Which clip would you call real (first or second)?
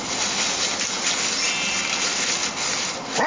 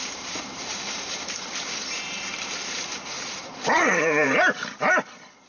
first